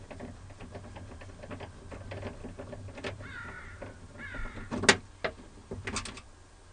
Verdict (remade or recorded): recorded